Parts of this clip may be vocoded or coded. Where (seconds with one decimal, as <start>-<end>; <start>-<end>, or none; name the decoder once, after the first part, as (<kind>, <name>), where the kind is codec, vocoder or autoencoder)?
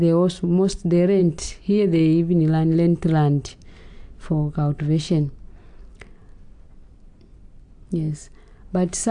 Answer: none